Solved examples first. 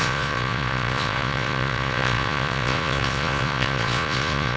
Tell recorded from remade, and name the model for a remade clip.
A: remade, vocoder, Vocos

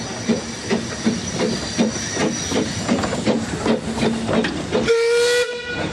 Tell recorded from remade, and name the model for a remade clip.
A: recorded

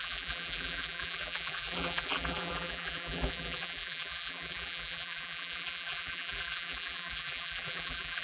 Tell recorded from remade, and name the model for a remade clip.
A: remade, vocoder, BigVGAN v2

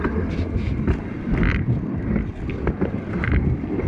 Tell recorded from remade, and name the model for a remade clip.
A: recorded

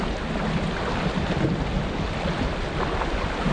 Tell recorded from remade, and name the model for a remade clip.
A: recorded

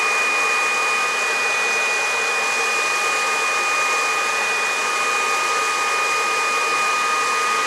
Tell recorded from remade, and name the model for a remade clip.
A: recorded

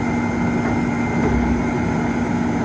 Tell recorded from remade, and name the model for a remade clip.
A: recorded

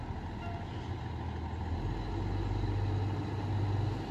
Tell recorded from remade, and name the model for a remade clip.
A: recorded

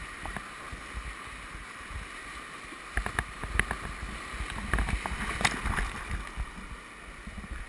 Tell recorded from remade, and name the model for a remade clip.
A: recorded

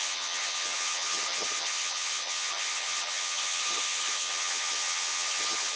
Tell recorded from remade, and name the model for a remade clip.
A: remade, vocoder, HiFi-GAN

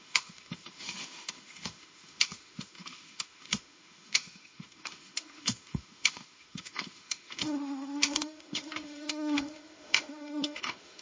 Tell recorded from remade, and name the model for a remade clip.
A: remade, autoencoder, DAC-VAE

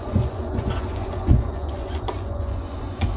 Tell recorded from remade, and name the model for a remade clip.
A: remade, vocoder, Vocos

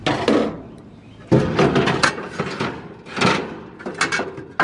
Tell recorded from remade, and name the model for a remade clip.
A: recorded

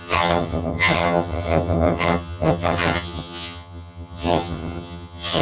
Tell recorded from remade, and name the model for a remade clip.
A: remade, vocoder, HiFi-GAN